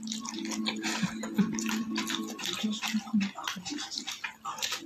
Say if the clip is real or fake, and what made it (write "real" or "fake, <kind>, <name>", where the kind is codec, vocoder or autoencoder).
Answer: real